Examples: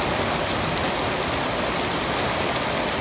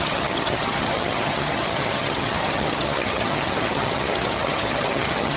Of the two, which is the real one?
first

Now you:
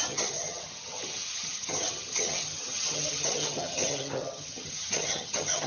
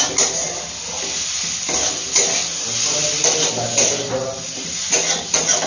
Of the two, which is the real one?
second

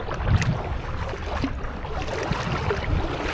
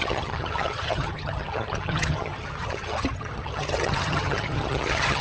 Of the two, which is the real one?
first